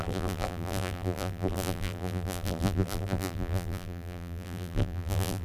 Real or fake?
fake